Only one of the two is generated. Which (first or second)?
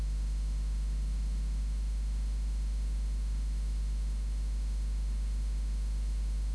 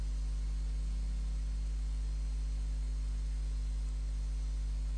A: first